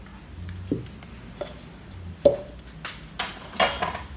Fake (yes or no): no